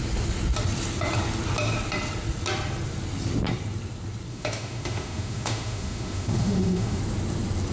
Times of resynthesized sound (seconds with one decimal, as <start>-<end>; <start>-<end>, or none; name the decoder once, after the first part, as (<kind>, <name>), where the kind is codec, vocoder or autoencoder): 4.3-7.0 (autoencoder, DAC-VAE)